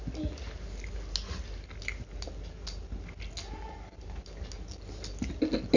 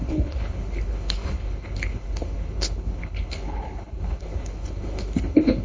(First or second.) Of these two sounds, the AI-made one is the second